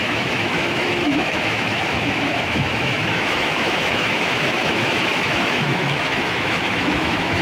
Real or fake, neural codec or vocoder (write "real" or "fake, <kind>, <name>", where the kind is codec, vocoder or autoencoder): fake, autoencoder, DAC-VAE